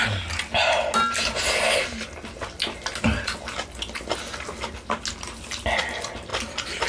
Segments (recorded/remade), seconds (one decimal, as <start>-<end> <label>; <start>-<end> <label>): 0.0-6.9 recorded